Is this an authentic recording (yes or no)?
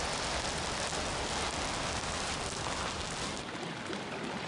yes